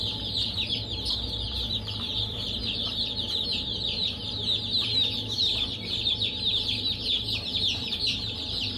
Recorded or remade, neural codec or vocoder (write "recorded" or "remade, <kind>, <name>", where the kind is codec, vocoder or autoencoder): remade, vocoder, BigVGAN v2